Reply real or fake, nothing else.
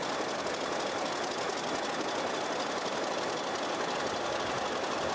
real